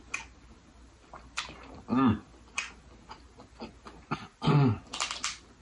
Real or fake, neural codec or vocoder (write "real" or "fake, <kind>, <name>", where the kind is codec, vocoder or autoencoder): real